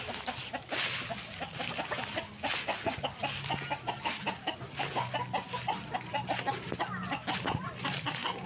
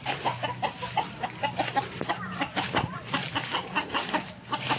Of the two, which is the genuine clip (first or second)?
first